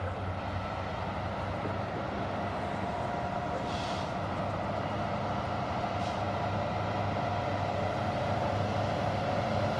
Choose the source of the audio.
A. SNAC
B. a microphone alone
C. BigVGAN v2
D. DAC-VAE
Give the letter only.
B